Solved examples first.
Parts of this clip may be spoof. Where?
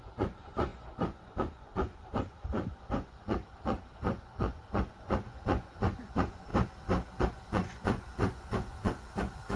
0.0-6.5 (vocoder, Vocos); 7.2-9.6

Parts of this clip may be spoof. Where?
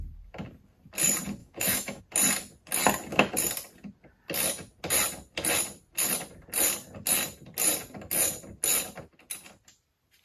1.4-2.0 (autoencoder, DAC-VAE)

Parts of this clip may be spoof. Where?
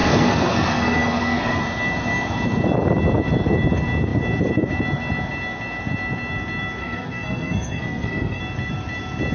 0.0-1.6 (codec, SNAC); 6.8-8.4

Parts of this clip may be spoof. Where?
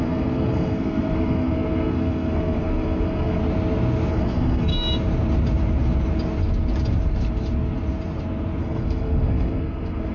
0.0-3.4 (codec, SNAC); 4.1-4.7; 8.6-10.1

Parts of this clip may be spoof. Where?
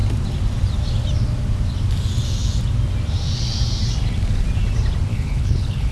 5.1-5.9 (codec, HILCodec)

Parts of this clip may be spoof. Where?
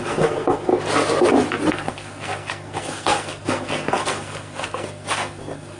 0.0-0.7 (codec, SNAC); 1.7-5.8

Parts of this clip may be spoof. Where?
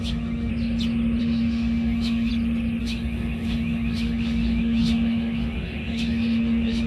0.0-0.5 (autoencoder, DAC-VAE); 1.2-2.3; 2.8-6.9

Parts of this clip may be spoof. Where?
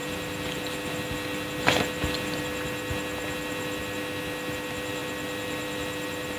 0.0-2.4 (vocoder, BigVGAN v2); 5.0-6.4